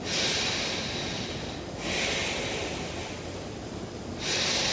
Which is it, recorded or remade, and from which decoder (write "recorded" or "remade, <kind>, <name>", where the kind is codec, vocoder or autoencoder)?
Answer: recorded